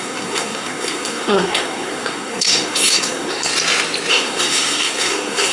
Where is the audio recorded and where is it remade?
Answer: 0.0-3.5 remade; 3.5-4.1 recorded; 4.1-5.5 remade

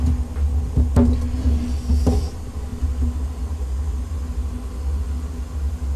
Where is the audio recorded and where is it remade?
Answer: 0.0-6.0 recorded

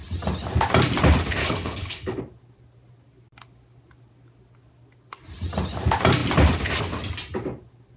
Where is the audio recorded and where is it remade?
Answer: 0.0-1.4 recorded; 1.4-2.2 remade; 2.2-8.0 recorded

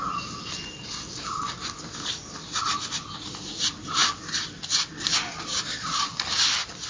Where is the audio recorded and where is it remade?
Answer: 0.0-6.9 recorded

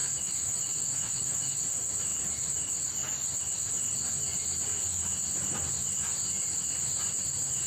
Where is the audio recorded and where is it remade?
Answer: 0.0-1.5 remade; 1.5-7.7 recorded

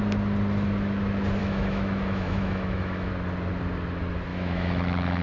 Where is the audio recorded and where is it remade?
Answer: 0.0-1.4 recorded; 1.4-3.1 remade; 3.1-4.3 recorded; 4.3-5.2 remade

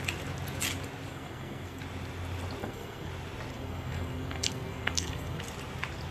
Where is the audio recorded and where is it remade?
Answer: 0.0-1.1 recorded; 1.1-1.8 remade; 1.8-2.6 recorded; 2.6-3.1 remade; 3.1-3.5 recorded; 3.5-5.4 remade; 5.4-6.1 recorded

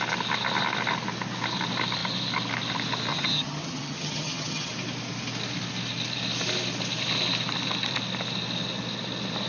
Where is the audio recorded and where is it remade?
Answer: 0.0-3.1 recorded; 3.1-4.7 remade; 4.7-9.5 recorded